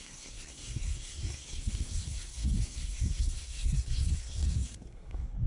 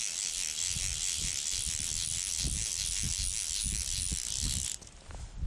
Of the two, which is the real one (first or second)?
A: second